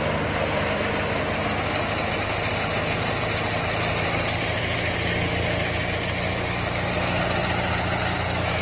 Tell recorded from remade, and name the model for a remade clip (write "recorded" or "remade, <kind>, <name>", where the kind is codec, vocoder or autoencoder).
recorded